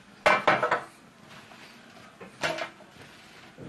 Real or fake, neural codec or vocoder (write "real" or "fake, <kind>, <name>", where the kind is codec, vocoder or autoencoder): real